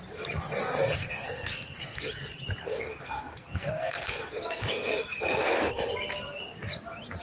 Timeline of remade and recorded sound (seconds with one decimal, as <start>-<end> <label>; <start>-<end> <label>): 0.0-0.8 recorded; 0.8-2.0 remade; 2.0-2.6 recorded; 2.6-5.8 remade; 5.8-7.2 recorded

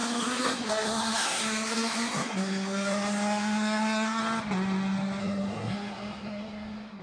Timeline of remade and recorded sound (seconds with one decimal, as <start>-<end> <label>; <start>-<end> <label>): 0.0-4.2 remade; 4.2-5.2 recorded; 5.2-7.0 remade

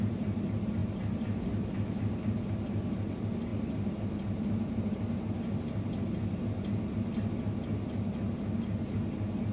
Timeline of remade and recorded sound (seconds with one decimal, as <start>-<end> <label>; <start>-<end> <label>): 0.0-9.5 recorded

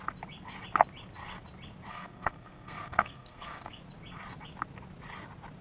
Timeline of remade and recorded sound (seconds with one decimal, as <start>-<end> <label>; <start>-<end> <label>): 0.0-1.9 recorded; 1.9-3.8 remade; 3.8-5.6 recorded

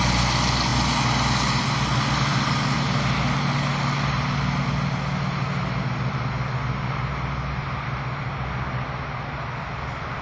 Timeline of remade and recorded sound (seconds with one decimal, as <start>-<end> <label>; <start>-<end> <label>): 0.0-10.2 recorded